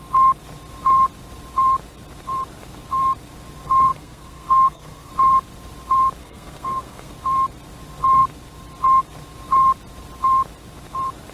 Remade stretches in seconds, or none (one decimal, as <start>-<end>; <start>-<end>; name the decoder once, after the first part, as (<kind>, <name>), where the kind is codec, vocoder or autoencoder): 3.9-5.1 (codec, SNAC); 6.2-7.1